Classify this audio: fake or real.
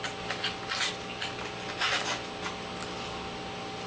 real